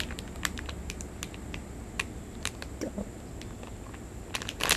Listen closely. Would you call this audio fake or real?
real